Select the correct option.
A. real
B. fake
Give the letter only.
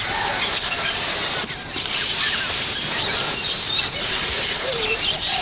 B